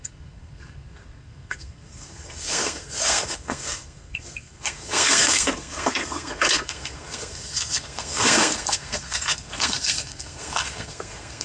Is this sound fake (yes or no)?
yes